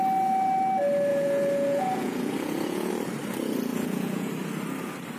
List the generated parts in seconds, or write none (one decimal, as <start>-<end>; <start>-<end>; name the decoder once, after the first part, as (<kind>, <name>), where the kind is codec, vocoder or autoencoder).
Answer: 1.1-2.9 (vocoder, Vocos); 3.7-4.3